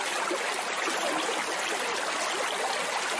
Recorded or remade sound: recorded